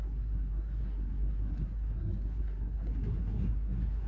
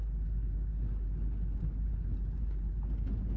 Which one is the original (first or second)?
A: second